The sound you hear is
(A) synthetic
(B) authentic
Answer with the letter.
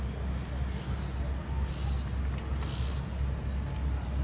B